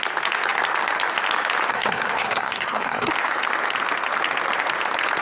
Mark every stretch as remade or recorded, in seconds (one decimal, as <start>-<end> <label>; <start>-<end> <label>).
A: 0.0-1.7 recorded; 1.7-3.1 remade; 3.1-5.2 recorded